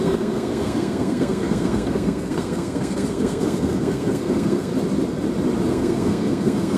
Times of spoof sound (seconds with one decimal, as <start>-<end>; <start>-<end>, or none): 0.0-4.7; 5.7-6.8